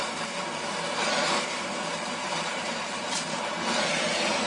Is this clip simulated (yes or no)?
yes